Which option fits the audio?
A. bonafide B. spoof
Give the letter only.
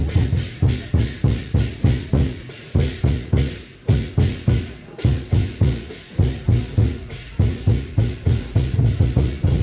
B